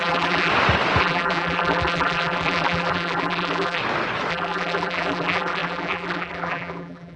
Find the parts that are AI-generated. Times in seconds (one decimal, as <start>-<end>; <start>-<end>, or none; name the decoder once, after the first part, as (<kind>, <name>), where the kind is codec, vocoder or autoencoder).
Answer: 0.0-0.5 (vocoder, BigVGAN v2); 1.0-3.8; 4.3-7.2